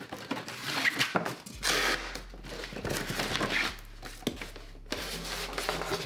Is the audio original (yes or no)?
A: yes